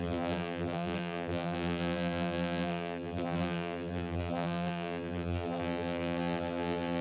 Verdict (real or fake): fake